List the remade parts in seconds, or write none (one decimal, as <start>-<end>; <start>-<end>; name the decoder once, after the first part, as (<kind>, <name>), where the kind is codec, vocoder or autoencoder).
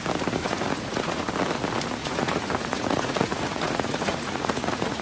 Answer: 0.4-1.3 (vocoder, Vocos); 2.0-5.0